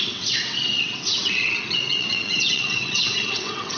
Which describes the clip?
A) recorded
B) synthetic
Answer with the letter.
B